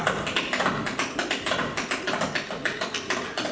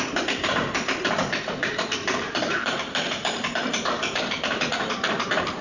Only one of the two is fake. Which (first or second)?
second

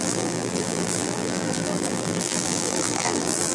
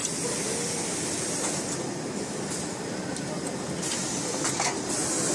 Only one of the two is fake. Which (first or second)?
first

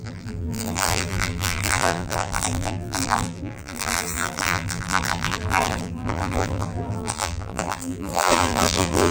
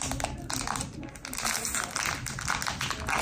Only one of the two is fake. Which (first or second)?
first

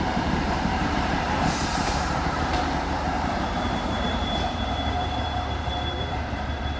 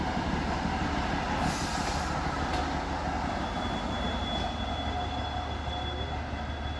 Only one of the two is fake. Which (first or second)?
first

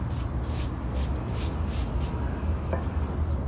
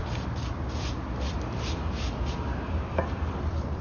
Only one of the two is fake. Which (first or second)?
second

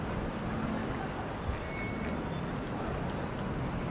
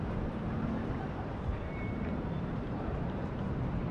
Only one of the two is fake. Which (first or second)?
second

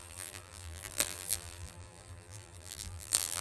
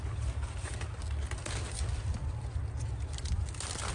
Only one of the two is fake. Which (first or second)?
first